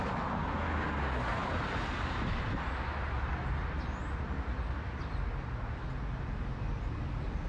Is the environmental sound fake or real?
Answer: real